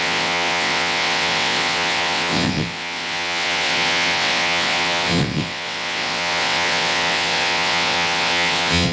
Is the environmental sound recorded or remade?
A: remade